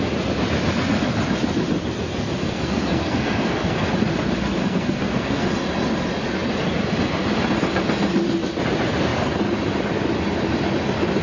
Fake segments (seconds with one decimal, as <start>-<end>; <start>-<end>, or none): 2.4-3.9; 4.6-5.5